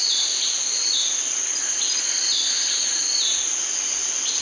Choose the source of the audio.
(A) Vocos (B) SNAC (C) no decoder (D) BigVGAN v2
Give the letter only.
C